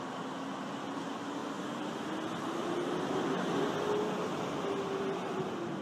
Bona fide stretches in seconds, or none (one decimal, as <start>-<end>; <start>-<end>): 0.0-5.8